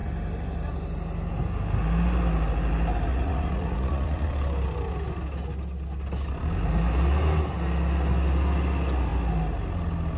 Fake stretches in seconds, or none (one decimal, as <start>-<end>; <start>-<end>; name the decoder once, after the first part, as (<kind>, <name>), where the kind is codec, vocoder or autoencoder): 3.1-4.3 (vocoder, Vocos)